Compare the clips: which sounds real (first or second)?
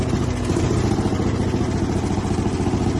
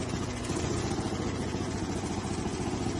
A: first